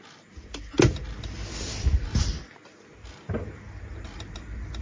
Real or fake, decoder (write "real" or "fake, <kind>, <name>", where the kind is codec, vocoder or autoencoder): real